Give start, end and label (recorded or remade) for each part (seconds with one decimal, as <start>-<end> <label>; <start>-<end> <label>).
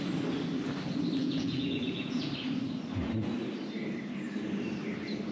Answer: 0.0-1.2 recorded; 1.2-2.3 remade; 2.3-5.3 recorded